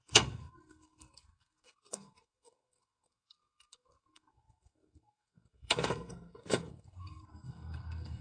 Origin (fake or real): fake